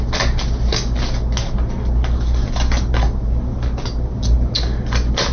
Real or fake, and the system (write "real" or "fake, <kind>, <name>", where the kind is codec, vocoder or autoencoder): real